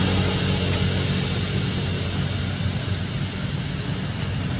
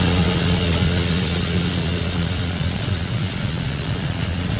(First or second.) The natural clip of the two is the first